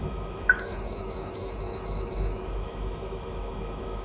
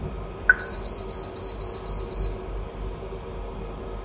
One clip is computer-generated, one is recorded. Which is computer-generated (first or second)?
first